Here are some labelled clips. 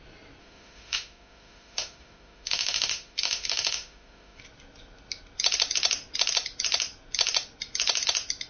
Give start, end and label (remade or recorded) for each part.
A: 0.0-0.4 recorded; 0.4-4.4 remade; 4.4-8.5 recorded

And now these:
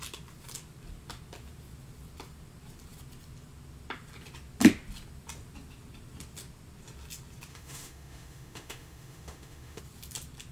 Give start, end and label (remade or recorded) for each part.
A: 0.0-7.5 recorded; 7.5-9.8 remade; 9.8-10.5 recorded

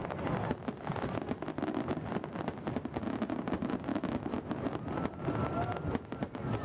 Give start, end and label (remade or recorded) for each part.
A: 0.0-3.9 recorded; 3.9-4.5 remade; 4.5-6.6 recorded

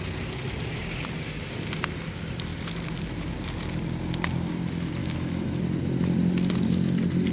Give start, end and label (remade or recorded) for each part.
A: 0.0-5.0 recorded; 5.0-5.6 remade; 5.6-7.3 recorded

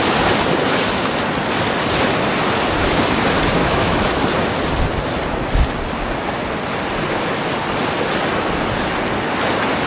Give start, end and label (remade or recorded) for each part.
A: 0.0-3.6 recorded; 3.6-4.2 remade; 4.2-9.9 recorded

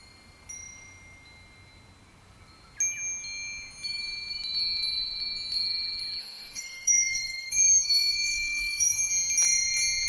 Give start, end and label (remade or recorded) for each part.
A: 0.0-6.2 recorded; 6.2-9.1 remade; 9.1-10.1 recorded